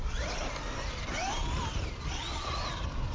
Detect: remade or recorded recorded